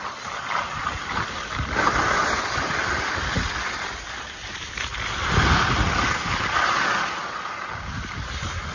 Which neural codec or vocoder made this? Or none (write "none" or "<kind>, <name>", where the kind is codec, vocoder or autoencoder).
none